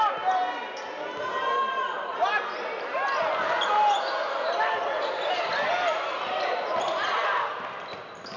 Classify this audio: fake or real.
real